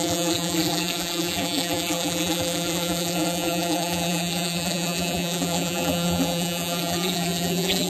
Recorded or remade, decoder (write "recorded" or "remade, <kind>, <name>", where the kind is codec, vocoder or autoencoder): remade, vocoder, BigVGAN v2